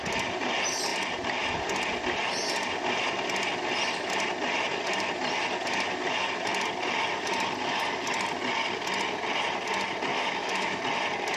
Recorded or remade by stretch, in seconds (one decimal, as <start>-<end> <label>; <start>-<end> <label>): 0.0-10.1 recorded; 10.1-10.8 remade; 10.8-11.4 recorded